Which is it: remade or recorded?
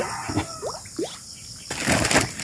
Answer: recorded